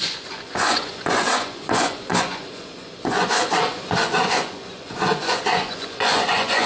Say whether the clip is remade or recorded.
remade